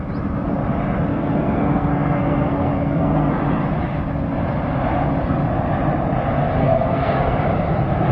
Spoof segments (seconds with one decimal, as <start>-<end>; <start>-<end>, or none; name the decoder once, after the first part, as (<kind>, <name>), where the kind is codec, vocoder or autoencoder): 1.1-3.4 (codec, SNAC); 6.6-7.4